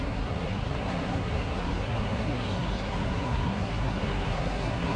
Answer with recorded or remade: remade